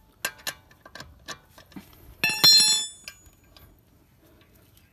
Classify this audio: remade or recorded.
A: recorded